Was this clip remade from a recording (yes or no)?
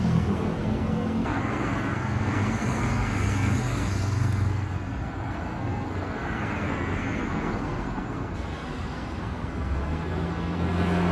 yes